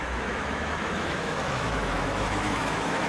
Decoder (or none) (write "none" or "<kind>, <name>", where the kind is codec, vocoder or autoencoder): autoencoder, DAC-VAE